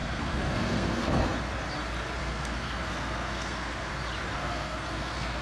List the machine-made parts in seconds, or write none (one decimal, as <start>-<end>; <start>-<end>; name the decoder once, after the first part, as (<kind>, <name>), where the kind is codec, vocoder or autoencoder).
0.0-1.4 (codec, SNAC); 2.2-3.9; 4.3-5.4